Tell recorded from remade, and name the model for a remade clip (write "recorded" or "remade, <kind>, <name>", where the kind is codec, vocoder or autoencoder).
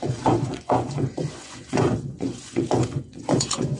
remade, vocoder, Vocos